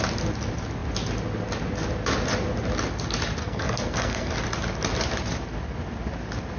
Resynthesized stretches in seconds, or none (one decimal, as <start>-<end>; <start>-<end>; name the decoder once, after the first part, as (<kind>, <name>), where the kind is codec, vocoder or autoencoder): 3.4-4.3 (codec, SNAC)